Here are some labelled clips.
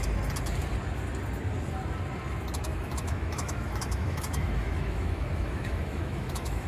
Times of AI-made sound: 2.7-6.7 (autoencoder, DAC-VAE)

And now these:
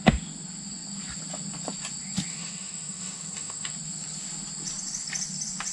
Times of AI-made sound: 2.3-3.7 (autoencoder, DAC-VAE)

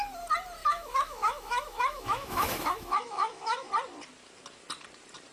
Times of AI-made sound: 0.6-3.7 (autoencoder, DAC-VAE)